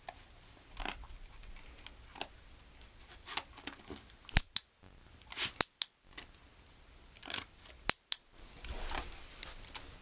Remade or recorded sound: recorded